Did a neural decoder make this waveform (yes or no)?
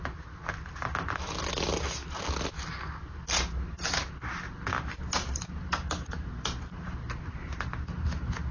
no